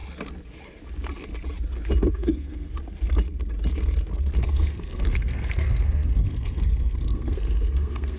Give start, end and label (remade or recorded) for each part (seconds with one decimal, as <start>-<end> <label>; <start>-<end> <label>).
0.0-2.1 recorded; 2.1-2.7 remade; 2.7-4.4 recorded; 4.4-8.2 remade